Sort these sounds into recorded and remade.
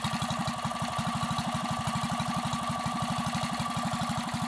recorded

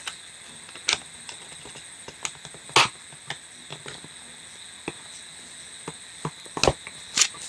recorded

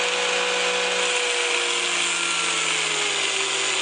recorded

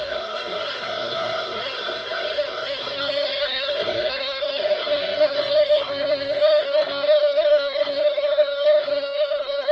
remade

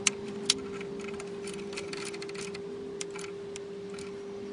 recorded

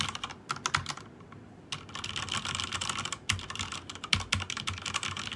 recorded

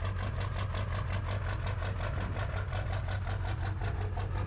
recorded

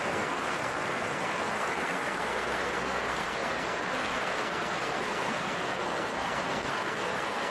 remade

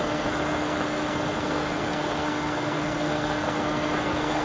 remade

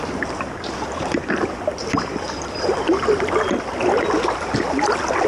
recorded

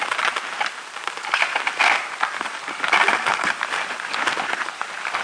recorded